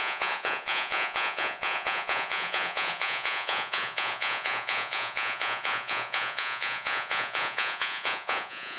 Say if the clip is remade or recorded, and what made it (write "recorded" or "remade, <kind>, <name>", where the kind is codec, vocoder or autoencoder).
remade, vocoder, Vocos